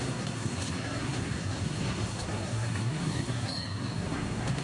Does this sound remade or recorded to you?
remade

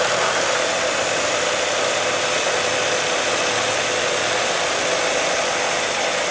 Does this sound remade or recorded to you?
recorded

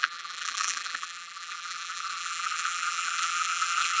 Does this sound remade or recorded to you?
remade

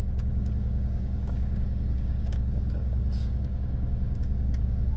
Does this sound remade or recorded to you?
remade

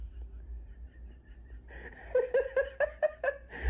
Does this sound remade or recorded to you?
recorded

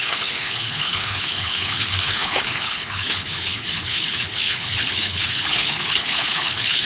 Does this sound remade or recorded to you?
remade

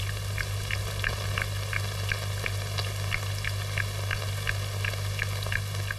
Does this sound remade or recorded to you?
recorded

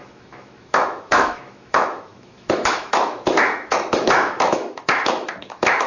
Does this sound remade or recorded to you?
remade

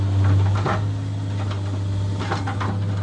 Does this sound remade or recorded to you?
recorded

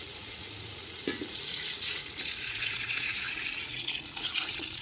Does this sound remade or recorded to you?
remade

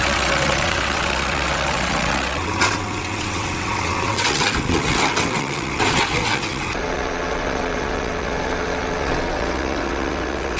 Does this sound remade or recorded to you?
remade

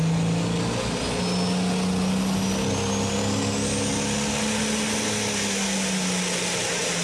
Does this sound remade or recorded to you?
recorded